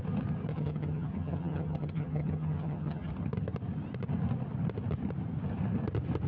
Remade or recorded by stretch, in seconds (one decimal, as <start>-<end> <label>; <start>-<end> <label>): 0.0-0.5 recorded; 0.5-3.1 remade; 3.1-6.3 recorded